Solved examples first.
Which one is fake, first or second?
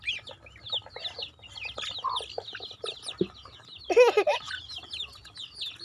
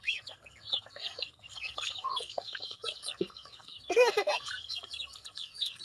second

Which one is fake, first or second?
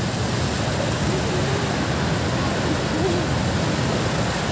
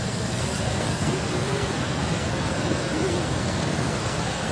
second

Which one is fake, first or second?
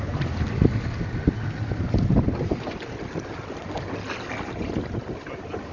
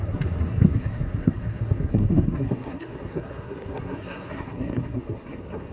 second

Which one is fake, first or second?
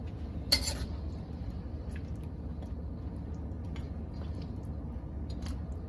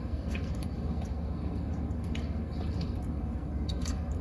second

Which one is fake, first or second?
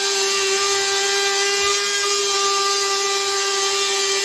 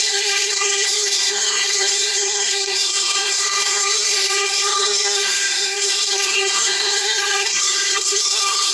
second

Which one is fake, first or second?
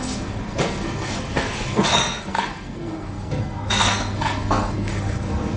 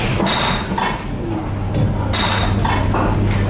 first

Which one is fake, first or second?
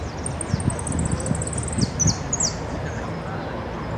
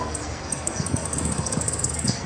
second